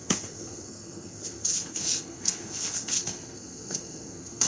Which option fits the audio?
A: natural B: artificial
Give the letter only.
B